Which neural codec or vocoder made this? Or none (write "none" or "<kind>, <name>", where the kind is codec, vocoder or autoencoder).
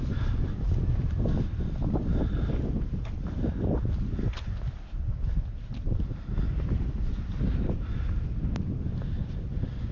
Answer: none